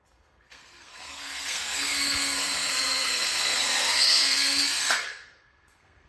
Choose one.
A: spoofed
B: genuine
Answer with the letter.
A